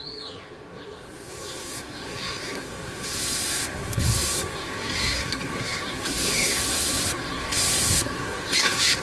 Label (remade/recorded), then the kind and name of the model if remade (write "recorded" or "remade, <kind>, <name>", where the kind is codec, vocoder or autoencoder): remade, codec, SNAC